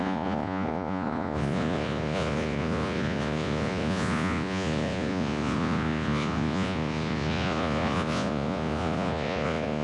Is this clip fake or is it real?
fake